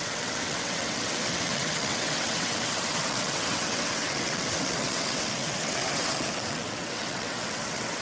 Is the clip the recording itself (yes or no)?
no